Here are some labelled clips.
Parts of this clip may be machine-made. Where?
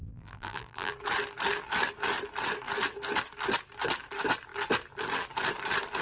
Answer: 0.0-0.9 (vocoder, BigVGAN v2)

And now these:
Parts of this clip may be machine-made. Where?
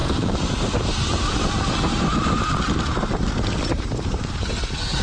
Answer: 0.0-1.3 (vocoder, BigVGAN v2); 3.7-4.5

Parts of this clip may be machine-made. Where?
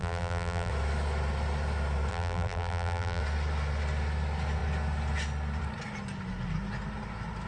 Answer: 0.0-0.7 (vocoder, BigVGAN v2); 2.1-3.2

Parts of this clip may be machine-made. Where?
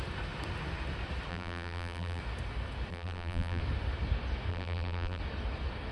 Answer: 1.3-2.2 (vocoder, BigVGAN v2); 2.9-3.6; 4.5-5.2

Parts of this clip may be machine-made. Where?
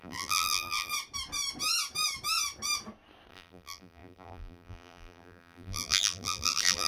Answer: 0.0-0.9 (vocoder, BigVGAN v2); 3.3-6.9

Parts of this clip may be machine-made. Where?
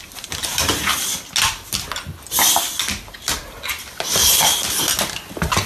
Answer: none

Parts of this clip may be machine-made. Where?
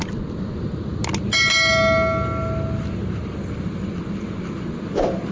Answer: none